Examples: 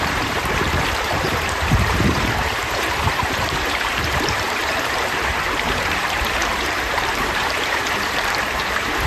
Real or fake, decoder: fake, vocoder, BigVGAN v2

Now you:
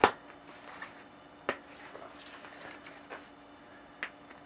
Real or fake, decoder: real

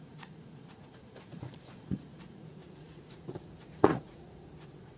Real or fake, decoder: fake, vocoder, Vocos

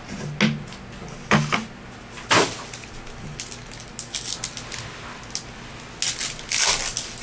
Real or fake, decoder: real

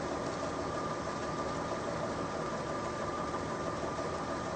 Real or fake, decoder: real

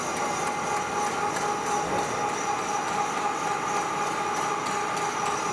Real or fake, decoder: real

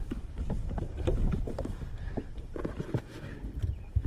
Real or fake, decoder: fake, vocoder, BigVGAN v2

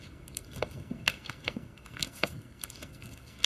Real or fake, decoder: fake, codec, SNAC